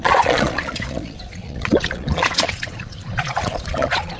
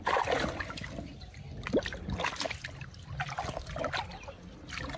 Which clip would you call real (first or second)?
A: second